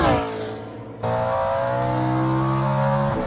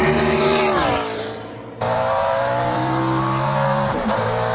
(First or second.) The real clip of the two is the first